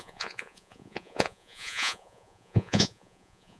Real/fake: fake